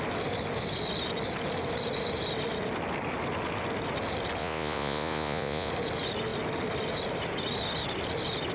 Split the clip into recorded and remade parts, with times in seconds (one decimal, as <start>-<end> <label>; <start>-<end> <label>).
0.0-4.4 recorded; 4.4-5.7 remade; 5.7-8.5 recorded

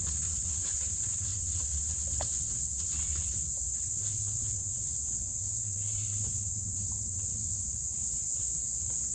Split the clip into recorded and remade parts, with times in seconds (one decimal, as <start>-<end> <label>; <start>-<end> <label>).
0.0-9.1 remade